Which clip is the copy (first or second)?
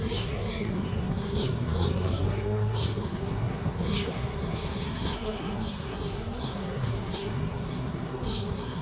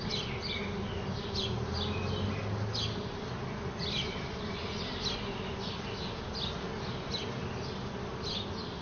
first